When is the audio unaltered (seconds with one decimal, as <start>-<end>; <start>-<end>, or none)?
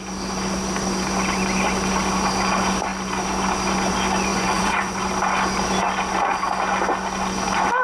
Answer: 0.0-4.3; 5.0-7.8